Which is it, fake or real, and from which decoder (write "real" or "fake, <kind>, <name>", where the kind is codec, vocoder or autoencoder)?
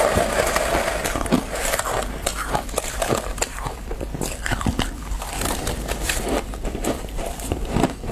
fake, vocoder, BigVGAN v2